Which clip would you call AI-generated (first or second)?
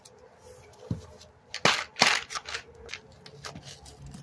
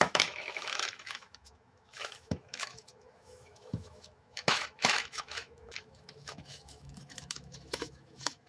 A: second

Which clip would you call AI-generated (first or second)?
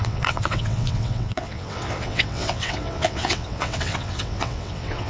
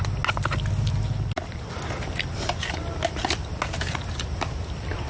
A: first